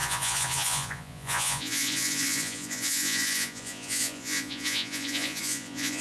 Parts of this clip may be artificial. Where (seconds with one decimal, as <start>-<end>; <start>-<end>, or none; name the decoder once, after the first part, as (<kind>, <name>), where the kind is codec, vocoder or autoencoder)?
0.0-6.0 (vocoder, Vocos)